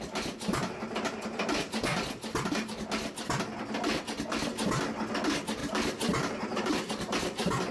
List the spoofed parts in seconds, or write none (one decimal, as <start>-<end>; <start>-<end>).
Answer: 5.6-7.7